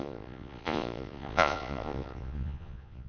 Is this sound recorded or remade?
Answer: remade